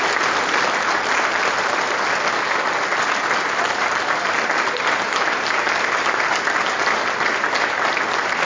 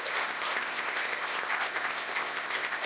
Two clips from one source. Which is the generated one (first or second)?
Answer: second